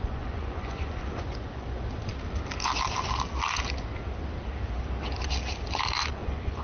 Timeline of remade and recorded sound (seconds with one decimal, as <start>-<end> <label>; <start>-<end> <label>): 0.0-2.1 remade; 2.1-6.1 recorded; 6.1-6.6 remade